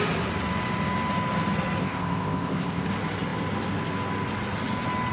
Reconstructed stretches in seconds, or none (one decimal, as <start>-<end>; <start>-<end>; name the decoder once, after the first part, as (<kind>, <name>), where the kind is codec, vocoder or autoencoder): 1.8-2.9 (codec, ZipCodec)